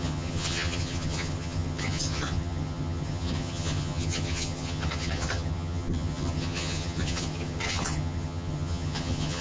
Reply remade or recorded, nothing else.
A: remade